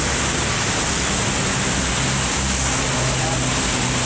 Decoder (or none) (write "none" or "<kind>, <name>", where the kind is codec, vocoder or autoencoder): none